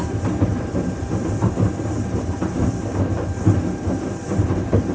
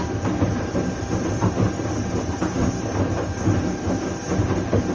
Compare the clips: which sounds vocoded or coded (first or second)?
first